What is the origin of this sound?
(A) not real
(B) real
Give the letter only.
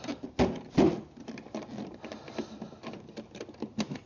B